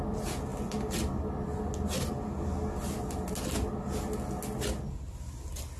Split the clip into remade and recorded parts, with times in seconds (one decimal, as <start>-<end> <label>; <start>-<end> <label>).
0.0-5.8 recorded